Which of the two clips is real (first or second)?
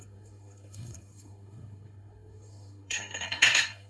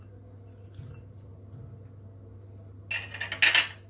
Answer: second